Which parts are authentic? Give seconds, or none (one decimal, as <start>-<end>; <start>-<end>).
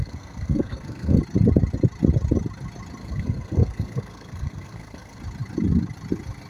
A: 1.2-3.0; 5.2-6.5